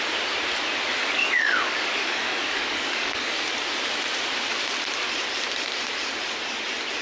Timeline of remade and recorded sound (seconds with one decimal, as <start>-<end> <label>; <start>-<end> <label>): 0.0-1.0 recorded; 1.0-3.3 remade; 3.3-7.0 recorded